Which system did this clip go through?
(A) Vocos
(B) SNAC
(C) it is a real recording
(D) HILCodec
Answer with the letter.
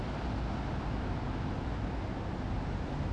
C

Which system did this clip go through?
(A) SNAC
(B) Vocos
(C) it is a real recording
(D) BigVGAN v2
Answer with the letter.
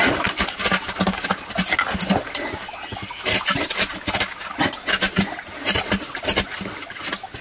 C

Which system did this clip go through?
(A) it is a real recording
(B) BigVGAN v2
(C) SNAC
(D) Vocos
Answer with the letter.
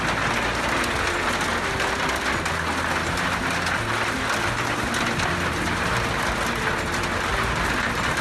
A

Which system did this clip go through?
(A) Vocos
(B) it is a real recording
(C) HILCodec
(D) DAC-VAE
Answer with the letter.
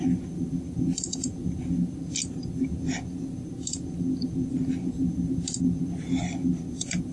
B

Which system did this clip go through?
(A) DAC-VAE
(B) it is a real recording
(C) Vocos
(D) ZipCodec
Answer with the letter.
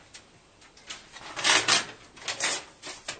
B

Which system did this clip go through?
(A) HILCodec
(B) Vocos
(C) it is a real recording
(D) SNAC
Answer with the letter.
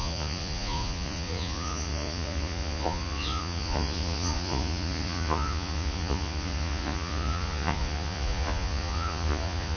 B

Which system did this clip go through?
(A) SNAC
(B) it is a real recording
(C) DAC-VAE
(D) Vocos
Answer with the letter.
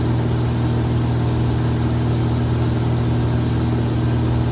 B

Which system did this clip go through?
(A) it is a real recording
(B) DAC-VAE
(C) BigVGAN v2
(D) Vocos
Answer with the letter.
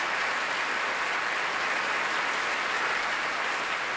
A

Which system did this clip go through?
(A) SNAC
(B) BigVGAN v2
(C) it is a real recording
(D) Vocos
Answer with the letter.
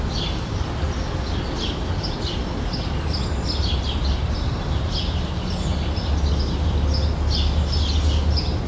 C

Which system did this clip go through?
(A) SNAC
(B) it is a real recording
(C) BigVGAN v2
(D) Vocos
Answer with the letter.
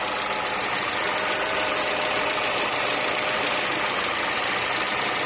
B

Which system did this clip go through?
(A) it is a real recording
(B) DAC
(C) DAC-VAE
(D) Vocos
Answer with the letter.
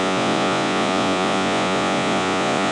D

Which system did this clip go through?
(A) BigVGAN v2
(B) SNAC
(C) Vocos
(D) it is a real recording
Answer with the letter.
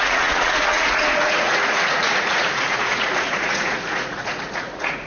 C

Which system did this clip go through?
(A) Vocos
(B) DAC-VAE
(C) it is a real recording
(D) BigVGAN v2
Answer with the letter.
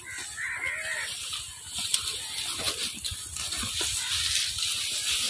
C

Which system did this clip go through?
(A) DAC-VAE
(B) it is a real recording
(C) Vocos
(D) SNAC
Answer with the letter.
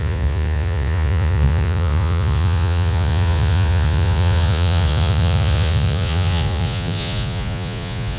C